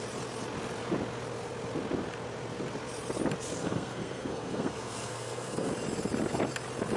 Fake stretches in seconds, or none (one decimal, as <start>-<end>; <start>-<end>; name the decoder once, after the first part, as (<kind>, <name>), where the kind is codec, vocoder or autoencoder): 3.6-5.7 (codec, SNAC)